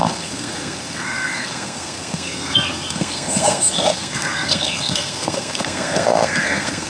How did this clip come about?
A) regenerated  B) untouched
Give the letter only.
A